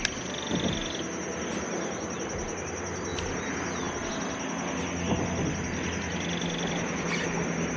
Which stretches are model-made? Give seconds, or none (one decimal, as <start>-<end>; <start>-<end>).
none